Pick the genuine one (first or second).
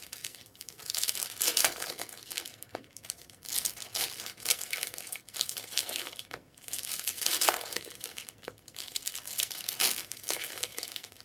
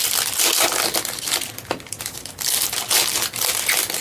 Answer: second